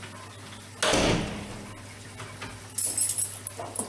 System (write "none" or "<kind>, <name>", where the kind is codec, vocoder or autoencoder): none